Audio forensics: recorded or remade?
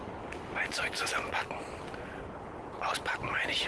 recorded